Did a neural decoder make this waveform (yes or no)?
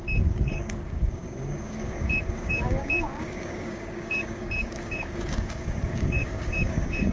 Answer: yes